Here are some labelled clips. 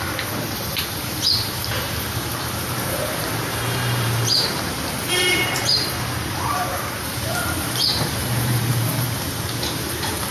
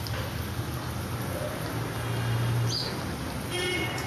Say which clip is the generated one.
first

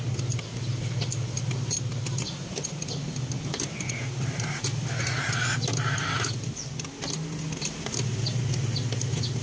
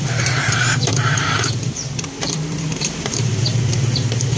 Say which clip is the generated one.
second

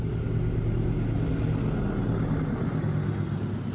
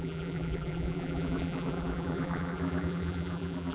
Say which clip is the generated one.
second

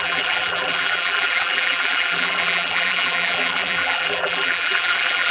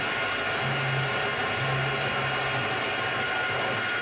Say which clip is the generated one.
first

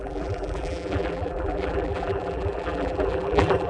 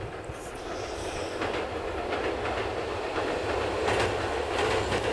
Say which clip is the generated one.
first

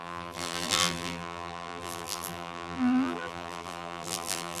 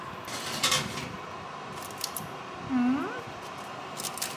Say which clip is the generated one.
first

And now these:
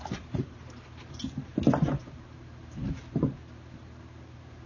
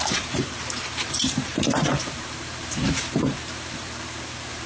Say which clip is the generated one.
second